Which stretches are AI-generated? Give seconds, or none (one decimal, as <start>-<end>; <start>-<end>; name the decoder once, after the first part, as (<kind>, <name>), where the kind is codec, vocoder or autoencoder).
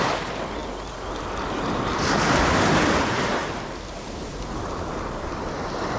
none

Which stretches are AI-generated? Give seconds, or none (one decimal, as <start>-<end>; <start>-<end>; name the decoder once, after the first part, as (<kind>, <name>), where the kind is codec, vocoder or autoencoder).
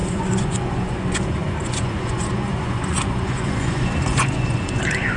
0.0-5.2 (vocoder, Vocos)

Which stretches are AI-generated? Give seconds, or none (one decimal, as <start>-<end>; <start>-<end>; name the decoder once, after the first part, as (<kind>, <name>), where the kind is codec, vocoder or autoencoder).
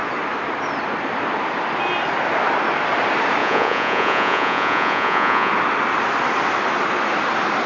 3.4-5.5 (vocoder, Vocos)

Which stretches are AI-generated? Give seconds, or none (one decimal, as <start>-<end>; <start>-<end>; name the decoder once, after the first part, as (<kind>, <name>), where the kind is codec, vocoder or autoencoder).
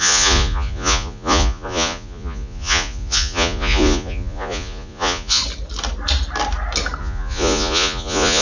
0.0-5.4 (vocoder, Vocos); 7.0-8.4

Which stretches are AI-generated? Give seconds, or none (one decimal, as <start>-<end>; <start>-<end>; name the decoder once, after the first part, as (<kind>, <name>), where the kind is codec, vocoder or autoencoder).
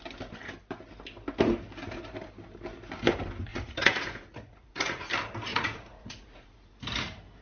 3.5-5.1 (vocoder, Vocos); 5.5-6.7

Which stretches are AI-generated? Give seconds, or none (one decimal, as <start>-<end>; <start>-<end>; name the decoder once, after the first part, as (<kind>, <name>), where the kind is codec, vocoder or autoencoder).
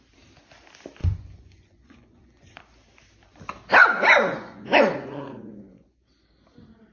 1.0-2.6 (vocoder, Vocos); 3.9-6.1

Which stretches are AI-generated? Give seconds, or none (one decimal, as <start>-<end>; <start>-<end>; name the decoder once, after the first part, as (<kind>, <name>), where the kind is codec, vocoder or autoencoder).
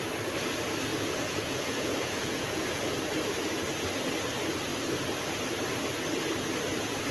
0.9-2.9 (vocoder, Vocos)